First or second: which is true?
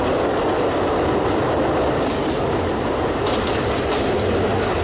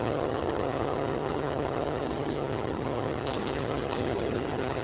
first